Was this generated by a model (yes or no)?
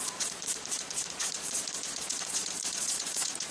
yes